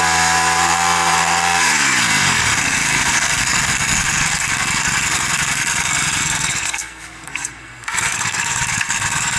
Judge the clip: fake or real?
fake